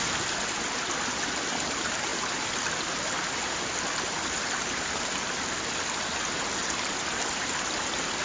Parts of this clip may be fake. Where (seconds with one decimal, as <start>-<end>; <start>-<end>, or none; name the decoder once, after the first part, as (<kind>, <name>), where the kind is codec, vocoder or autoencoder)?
none